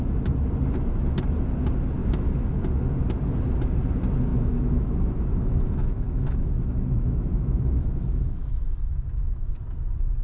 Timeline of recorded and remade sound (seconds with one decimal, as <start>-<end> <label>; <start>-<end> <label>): 0.0-2.0 recorded; 2.0-2.6 remade; 2.6-4.3 recorded; 4.3-9.5 remade; 9.5-10.2 recorded